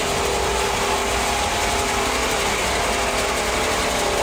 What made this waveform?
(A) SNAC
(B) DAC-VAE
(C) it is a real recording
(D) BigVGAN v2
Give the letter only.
C